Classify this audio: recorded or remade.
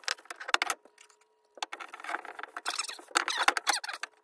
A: recorded